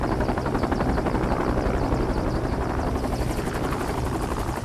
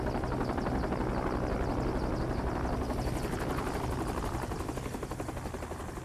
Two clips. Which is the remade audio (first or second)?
first